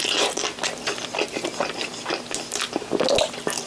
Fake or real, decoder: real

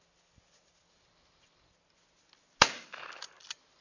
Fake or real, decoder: real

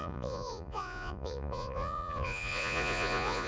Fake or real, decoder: fake, vocoder, Vocos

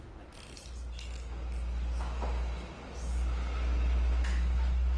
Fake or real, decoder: real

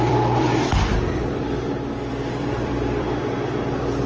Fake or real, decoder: fake, vocoder, BigVGAN v2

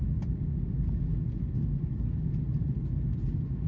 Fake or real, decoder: real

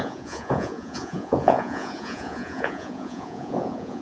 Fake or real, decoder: fake, vocoder, Vocos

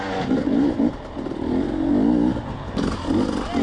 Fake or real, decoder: real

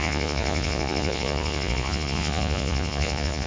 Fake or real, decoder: fake, vocoder, Vocos